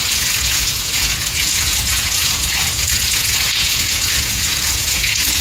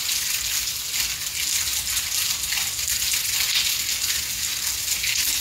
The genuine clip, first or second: second